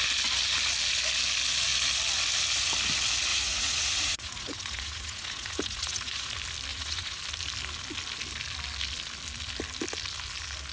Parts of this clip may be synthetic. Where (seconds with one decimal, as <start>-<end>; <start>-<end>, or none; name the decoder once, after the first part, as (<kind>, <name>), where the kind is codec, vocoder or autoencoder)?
3.3-6.3 (vocoder, Vocos); 6.7-7.2